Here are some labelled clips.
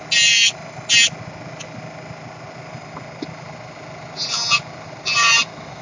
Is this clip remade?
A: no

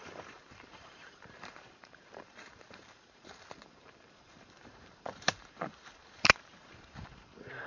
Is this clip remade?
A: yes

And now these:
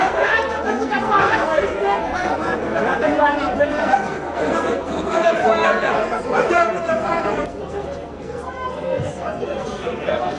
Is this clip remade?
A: yes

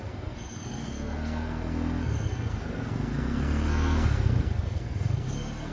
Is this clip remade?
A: yes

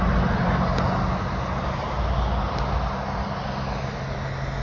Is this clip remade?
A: no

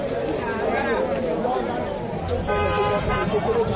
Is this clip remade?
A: no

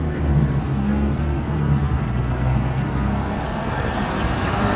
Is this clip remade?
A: yes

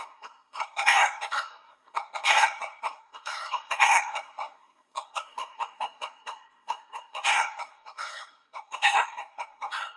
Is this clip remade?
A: yes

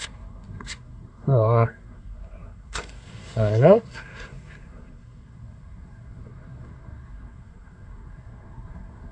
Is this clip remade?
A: yes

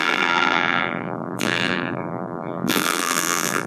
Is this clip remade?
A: yes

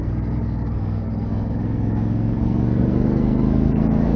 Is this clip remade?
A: yes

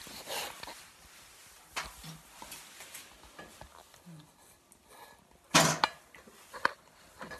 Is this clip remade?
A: no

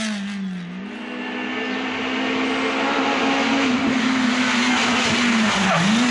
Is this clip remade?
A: no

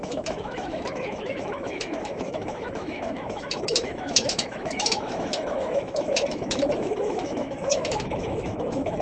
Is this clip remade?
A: yes